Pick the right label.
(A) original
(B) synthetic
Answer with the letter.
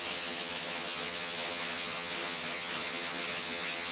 B